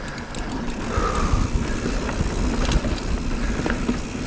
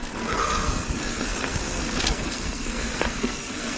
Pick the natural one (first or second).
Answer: first